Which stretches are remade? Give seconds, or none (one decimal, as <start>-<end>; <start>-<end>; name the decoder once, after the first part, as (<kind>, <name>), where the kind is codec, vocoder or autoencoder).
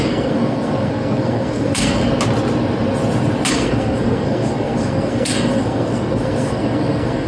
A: 0.0-2.0 (codec, SNAC); 3.5-7.3